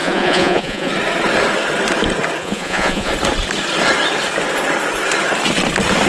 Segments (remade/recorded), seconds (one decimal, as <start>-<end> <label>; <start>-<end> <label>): 0.0-0.9 remade; 0.9-2.4 recorded; 2.4-3.1 remade; 3.1-6.1 recorded